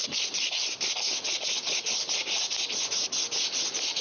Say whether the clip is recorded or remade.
recorded